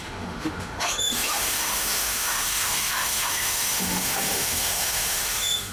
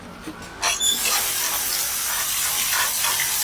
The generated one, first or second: first